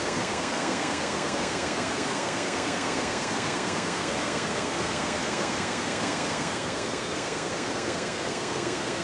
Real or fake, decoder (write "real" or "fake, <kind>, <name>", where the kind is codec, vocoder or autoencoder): fake, codec, SNAC